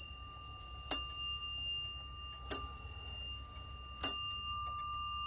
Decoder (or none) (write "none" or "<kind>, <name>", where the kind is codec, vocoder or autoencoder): none